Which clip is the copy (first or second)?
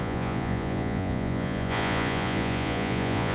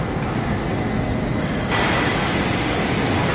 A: first